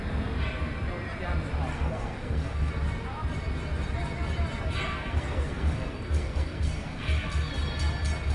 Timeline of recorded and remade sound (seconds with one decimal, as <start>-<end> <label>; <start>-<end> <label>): 0.0-1.7 recorded; 1.7-2.7 remade; 2.7-4.8 recorded; 4.8-7.5 remade; 7.5-8.3 recorded